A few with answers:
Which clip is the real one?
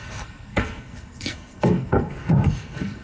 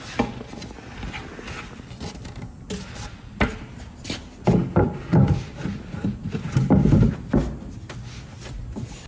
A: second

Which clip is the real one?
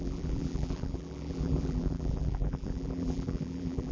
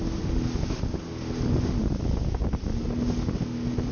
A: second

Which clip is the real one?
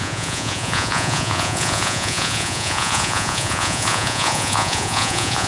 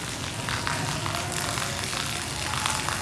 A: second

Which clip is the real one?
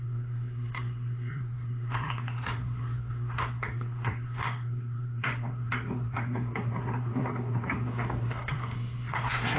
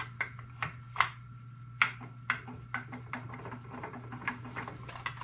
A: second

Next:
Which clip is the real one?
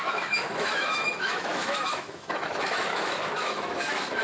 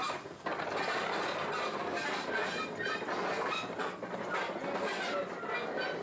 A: second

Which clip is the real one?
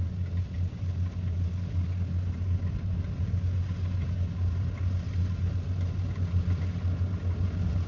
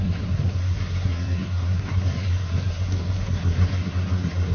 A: first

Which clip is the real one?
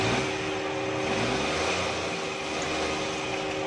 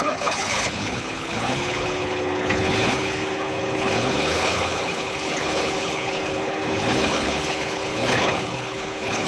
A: first